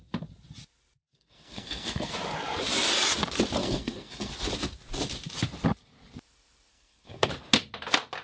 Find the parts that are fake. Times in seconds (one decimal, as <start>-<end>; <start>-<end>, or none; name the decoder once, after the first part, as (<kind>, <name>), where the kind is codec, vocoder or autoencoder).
1.1-2.1 (codec, SNAC); 3.6-4.3; 6.7-7.3